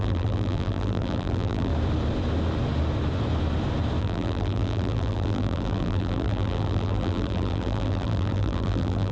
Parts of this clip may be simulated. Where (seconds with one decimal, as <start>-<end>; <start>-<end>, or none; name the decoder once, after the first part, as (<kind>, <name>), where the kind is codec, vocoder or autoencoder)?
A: 0.0-1.7 (vocoder, BigVGAN v2); 4.0-9.1